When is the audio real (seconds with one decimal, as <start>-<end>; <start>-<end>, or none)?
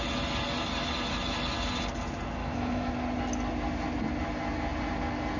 0.0-2.4; 2.9-5.4